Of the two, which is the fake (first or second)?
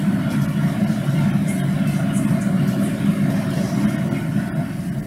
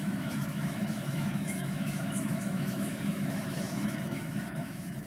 second